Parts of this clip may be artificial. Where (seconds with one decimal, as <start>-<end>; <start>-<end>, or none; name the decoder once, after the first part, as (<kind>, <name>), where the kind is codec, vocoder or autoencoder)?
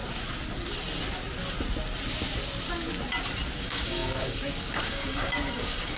3.6-6.0 (codec, DAC)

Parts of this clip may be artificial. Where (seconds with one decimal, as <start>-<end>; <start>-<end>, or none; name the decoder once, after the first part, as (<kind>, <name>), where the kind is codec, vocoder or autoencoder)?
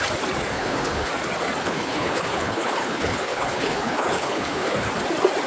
0.5-1.1 (codec, HILCodec); 1.6-4.9